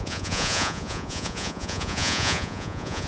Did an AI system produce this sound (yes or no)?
yes